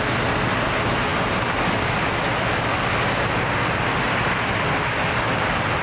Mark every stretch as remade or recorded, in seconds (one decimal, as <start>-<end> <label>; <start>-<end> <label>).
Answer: 0.0-5.8 recorded